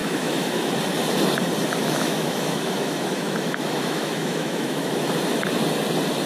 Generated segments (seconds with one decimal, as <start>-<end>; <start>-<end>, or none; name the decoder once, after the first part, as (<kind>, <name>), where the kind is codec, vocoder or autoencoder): 0.0-0.7 (autoencoder, DAC-VAE); 1.8-5.1